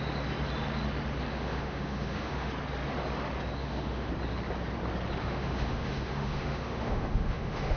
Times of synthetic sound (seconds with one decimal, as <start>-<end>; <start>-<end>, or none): 1.3-2.5; 3.6-4.1; 5.2-7.8